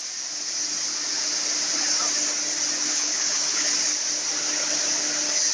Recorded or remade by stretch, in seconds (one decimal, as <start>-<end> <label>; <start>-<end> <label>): 0.0-2.9 recorded; 2.9-3.7 remade; 3.7-5.5 recorded